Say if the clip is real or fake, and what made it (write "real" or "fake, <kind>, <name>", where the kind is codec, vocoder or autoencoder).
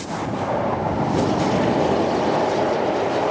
real